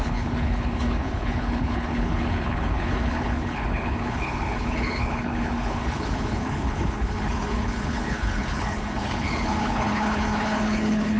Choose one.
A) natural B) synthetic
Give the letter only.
B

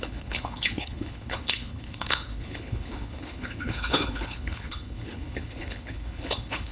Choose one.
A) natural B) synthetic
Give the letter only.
B